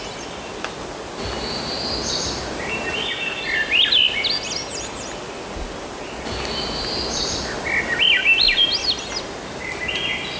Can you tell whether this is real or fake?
real